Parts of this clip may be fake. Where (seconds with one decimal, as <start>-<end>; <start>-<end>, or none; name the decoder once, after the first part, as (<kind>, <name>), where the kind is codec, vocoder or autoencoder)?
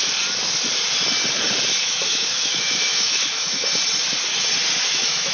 1.8-3.6 (autoencoder, DAC-VAE); 4.8-5.3